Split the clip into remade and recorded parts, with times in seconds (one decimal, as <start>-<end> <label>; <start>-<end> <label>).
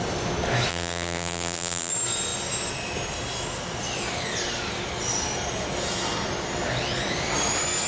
0.0-0.7 recorded; 0.7-1.9 remade; 1.9-7.9 recorded